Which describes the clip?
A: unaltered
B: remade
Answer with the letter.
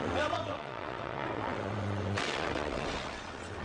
B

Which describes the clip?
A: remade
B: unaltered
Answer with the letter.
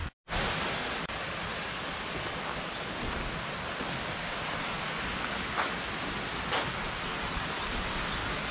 B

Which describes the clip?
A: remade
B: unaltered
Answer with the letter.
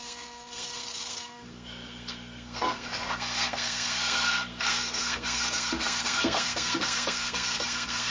A